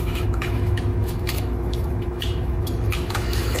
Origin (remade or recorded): remade